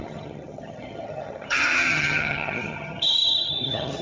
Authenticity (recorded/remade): remade